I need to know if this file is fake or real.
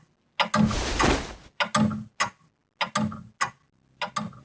real